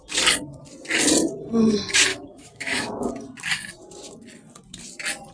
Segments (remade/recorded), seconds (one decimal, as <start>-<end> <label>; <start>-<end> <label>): 0.0-2.1 recorded; 2.1-3.1 remade; 3.1-5.3 recorded